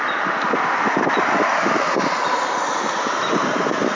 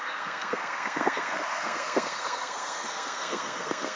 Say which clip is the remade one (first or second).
second